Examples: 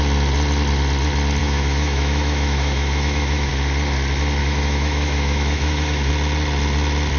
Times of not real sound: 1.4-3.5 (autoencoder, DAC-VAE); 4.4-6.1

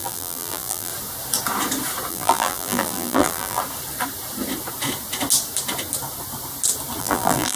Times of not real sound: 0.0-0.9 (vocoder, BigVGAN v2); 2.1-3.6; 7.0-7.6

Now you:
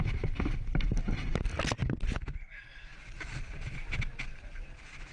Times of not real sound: none